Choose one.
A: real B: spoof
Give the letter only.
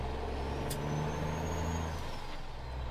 A